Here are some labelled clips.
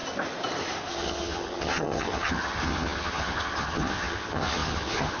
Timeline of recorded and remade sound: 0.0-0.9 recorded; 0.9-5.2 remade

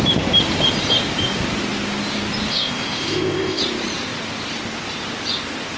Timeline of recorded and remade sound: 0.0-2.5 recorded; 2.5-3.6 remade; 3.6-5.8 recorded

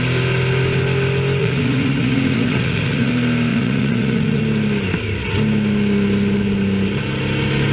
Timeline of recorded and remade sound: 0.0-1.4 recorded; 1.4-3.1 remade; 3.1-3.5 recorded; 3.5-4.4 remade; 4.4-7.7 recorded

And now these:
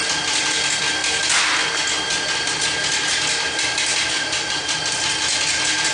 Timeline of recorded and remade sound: 0.0-3.9 recorded; 3.9-4.8 remade; 4.8-5.9 recorded